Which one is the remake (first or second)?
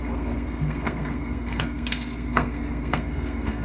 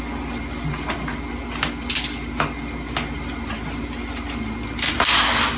first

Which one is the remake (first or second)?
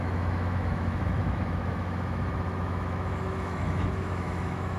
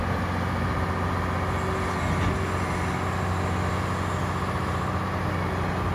first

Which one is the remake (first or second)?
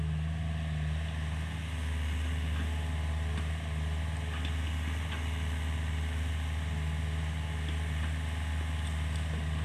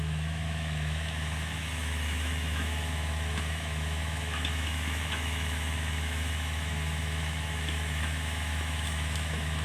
second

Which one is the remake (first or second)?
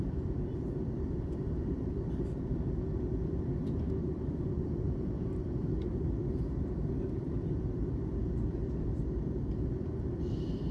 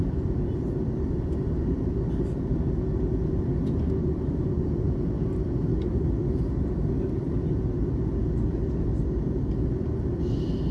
first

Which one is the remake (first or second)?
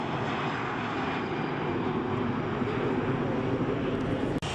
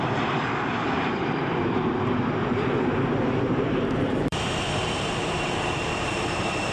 second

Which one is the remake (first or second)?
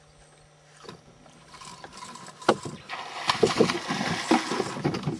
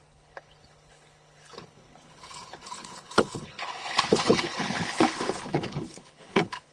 second